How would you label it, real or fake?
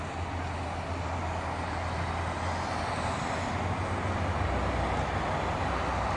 real